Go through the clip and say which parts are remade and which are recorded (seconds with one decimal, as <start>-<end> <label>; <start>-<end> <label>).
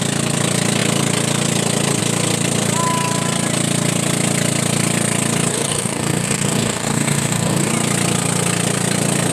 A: 0.0-5.5 recorded; 5.5-7.7 remade; 7.7-9.3 recorded